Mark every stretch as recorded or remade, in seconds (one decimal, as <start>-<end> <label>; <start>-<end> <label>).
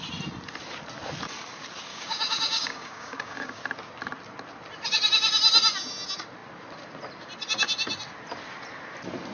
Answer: 0.0-1.9 recorded; 1.9-3.6 remade; 3.6-9.3 recorded